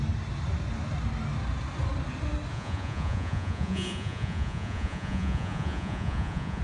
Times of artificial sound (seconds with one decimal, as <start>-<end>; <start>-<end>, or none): 2.5-6.6